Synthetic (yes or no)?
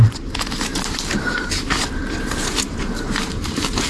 yes